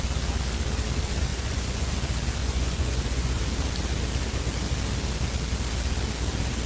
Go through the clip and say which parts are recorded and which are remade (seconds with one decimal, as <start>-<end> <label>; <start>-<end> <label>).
0.0-1.3 recorded; 1.3-1.9 remade; 1.9-2.4 recorded; 2.4-3.4 remade; 3.4-6.7 recorded

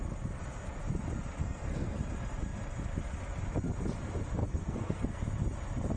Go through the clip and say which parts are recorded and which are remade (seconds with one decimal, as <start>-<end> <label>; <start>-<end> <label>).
0.0-1.4 recorded; 1.4-2.0 remade; 2.0-4.4 recorded; 4.4-5.2 remade; 5.2-6.0 recorded

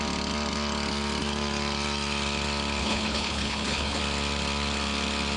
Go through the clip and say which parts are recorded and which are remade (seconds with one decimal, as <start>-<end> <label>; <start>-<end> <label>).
0.0-2.8 recorded; 2.8-4.0 remade; 4.0-5.4 recorded

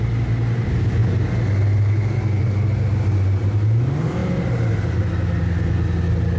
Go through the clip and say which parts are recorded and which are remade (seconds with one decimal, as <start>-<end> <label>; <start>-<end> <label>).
0.0-6.4 recorded

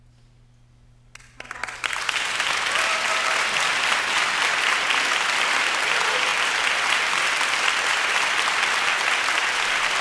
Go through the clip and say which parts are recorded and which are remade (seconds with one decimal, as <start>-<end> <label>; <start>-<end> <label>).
0.0-6.3 recorded; 6.3-8.3 remade; 8.3-10.0 recorded

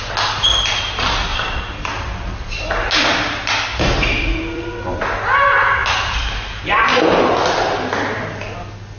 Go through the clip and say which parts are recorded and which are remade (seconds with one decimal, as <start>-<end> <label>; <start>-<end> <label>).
0.0-1.3 recorded; 1.3-4.8 remade; 4.8-9.0 recorded

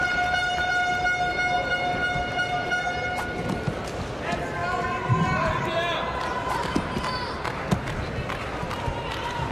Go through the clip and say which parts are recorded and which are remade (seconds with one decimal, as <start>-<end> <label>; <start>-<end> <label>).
0.0-9.5 recorded

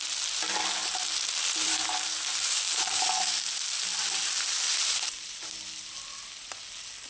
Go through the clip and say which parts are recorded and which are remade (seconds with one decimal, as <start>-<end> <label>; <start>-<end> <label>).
0.0-0.8 recorded; 0.8-3.4 remade; 3.4-4.7 recorded; 4.7-5.4 remade; 5.4-7.1 recorded